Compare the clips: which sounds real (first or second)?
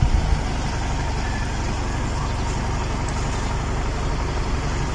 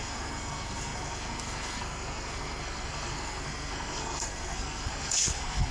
first